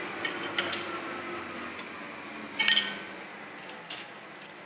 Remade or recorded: recorded